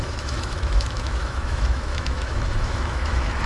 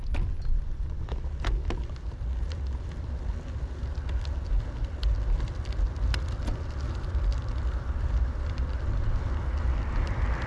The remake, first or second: first